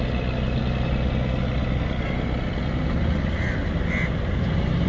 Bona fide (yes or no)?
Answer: yes